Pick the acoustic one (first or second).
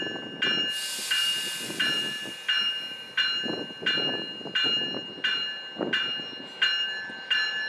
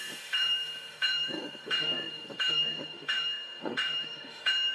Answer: first